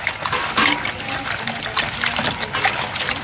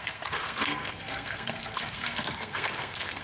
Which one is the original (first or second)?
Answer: first